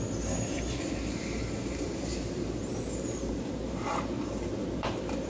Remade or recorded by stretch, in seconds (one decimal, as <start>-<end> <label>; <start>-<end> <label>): 0.0-5.3 remade